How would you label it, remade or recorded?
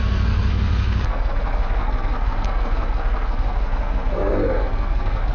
remade